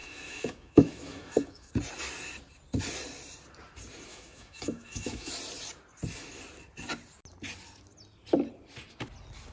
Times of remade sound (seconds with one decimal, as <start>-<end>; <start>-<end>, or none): 0.0-1.7; 4.1-5.3